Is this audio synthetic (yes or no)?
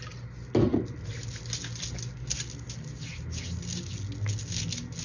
no